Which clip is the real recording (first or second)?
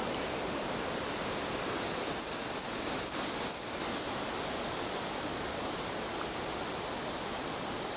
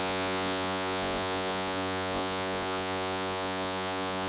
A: first